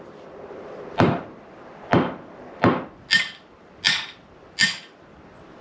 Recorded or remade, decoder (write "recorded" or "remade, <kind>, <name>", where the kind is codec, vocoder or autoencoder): recorded